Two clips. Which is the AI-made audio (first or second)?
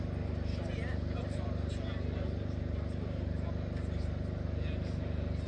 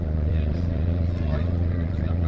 second